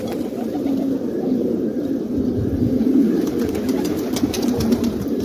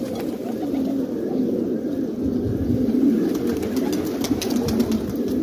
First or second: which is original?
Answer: second